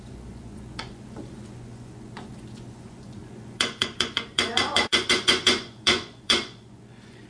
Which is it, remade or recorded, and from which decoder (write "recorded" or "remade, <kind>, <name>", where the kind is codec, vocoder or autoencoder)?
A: remade, vocoder, Vocos